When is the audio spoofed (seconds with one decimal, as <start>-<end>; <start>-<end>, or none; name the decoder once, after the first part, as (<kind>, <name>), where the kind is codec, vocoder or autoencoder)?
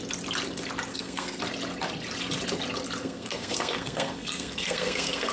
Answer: 0.9-1.4 (codec, SNAC); 3.0-5.3